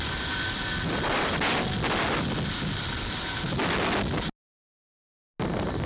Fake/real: real